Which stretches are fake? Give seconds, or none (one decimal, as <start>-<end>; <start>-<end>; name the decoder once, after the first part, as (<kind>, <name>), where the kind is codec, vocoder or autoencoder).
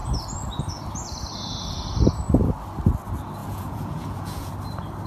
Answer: 3.4-4.5 (vocoder, Vocos)